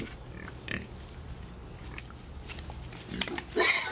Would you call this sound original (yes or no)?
yes